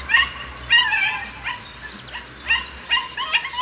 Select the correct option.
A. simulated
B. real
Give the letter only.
B